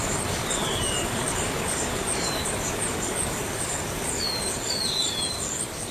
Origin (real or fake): fake